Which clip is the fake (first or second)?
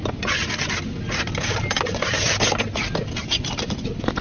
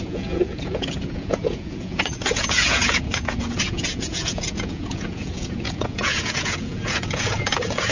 second